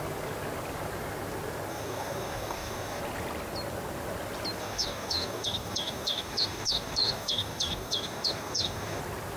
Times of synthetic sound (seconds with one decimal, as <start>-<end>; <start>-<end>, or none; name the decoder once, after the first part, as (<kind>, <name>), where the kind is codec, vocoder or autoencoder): 1.7-3.0 (codec, DAC); 4.6-9.0